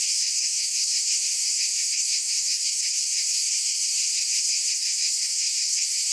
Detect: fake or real fake